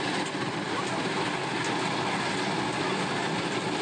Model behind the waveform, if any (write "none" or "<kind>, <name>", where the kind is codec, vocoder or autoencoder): none